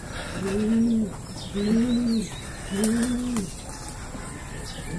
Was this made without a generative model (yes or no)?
yes